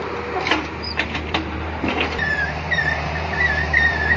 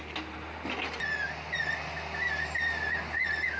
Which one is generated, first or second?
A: first